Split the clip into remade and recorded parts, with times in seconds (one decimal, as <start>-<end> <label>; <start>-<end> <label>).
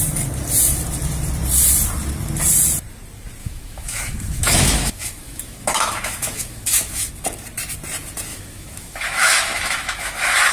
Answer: 0.0-3.4 recorded; 3.4-7.1 remade; 7.1-8.3 recorded; 8.3-10.5 remade